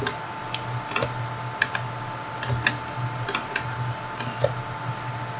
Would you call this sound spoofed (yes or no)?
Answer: no